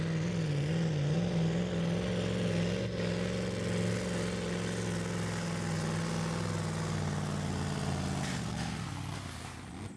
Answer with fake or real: real